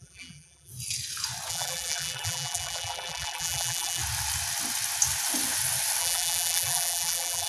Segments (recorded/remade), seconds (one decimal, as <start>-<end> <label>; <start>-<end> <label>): 0.0-0.7 remade; 0.7-1.5 recorded; 1.5-4.0 remade; 4.0-6.0 recorded; 6.0-7.5 remade